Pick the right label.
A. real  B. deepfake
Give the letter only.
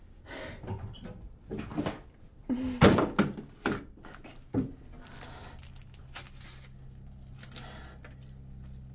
A